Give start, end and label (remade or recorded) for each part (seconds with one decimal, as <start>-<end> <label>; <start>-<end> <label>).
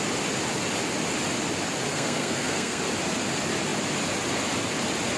0.0-1.9 recorded; 1.9-2.8 remade; 2.8-5.2 recorded